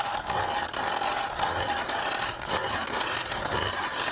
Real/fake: real